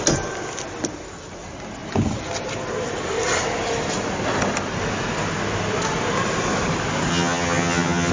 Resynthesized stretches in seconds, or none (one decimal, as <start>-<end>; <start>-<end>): 7.1-8.1